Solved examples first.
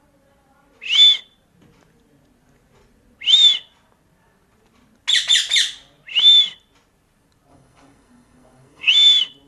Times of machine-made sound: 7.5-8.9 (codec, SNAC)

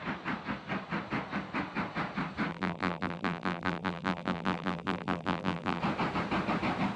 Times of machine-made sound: 2.5-5.8 (vocoder, BigVGAN v2)

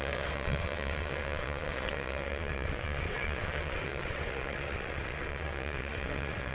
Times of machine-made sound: 0.0-6.5 (vocoder, WaveNeXt)

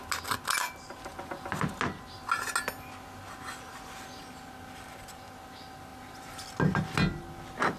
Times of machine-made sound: none

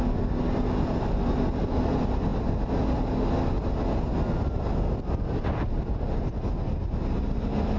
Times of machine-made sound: none

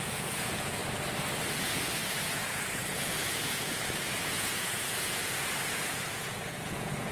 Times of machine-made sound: 0.0-0.8 (vocoder, Vocos); 1.5-7.1

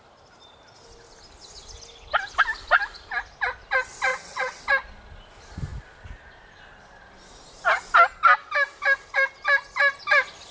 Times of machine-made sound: 4.1-4.6 (vocoder, WaveNeXt)

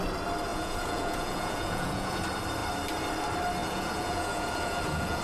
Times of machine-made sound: 0.5-2.2 (vocoder, Vocos); 3.6-5.2